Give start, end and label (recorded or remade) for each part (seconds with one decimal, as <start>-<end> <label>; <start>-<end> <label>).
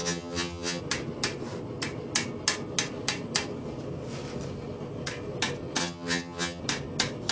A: 0.0-0.8 remade; 0.8-5.8 recorded; 5.8-6.6 remade; 6.6-7.3 recorded